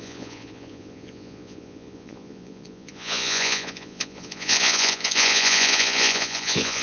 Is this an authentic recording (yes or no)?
no